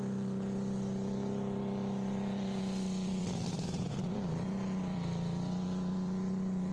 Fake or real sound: fake